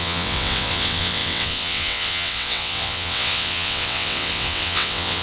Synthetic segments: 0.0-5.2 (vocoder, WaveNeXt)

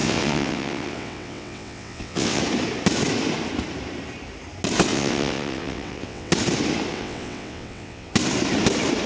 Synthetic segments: 0.0-2.4 (vocoder, WaveNeXt); 4.9-6.3; 6.9-8.1

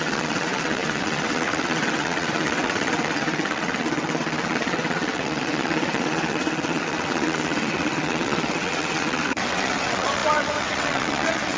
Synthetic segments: 0.0-11.6 (vocoder, WaveNeXt)

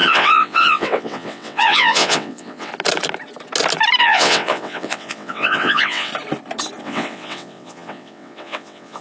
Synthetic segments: 0.0-2.7 (vocoder, WaveNeXt); 4.0-6.1; 6.8-9.0

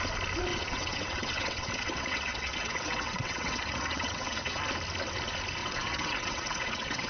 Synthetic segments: 0.5-4.6 (vocoder, WaveNeXt); 5.6-7.1